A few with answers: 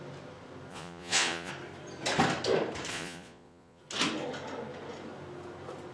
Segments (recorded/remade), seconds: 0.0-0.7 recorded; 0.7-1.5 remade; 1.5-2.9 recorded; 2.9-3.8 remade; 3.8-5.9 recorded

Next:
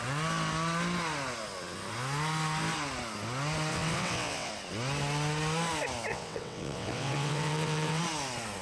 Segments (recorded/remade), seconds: 0.0-3.7 recorded; 3.7-4.5 remade; 4.5-6.1 recorded; 6.1-8.0 remade; 8.0-8.6 recorded

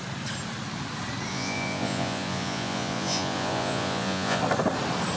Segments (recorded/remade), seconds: 0.0-1.3 recorded; 1.3-4.4 remade; 4.4-5.2 recorded

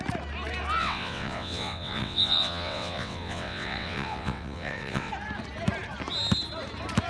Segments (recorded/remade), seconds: 0.0-0.8 recorded; 0.8-5.1 remade; 5.1-7.1 recorded